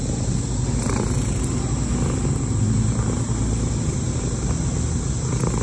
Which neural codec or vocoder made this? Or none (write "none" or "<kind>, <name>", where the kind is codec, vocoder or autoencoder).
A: none